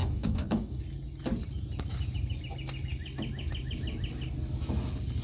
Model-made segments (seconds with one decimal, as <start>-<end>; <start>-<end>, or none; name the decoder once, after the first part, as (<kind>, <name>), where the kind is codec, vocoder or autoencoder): 0.0-0.8 (codec, DAC)